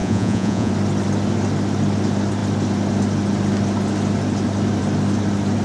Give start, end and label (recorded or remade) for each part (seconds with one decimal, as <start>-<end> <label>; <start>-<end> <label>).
0.0-0.7 remade; 0.7-5.6 recorded